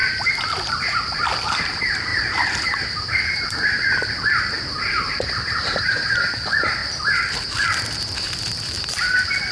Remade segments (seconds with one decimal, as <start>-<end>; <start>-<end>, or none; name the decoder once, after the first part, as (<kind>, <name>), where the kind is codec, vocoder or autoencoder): 0.0-6.8 (vocoder, BigVGAN v2); 8.8-9.5